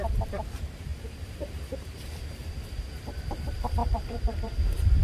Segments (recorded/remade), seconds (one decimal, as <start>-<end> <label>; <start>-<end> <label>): 0.0-5.0 remade